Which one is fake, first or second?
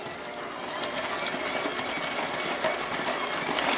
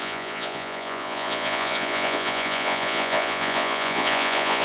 second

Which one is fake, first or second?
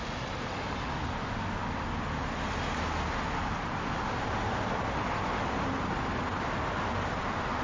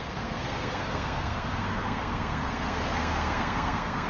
second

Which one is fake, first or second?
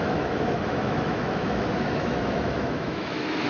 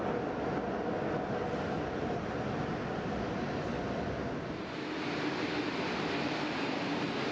first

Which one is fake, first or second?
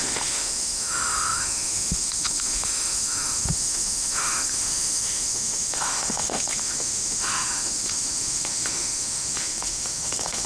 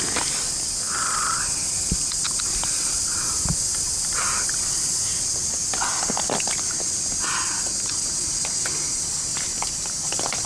first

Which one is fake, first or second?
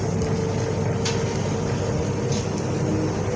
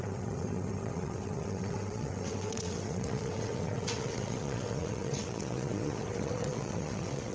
second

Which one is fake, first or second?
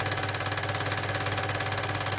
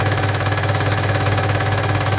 second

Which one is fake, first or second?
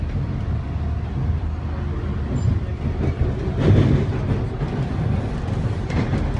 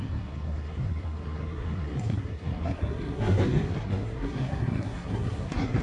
second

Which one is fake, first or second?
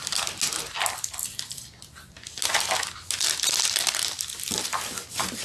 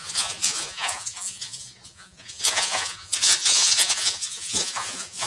second